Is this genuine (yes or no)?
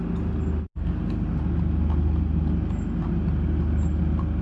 yes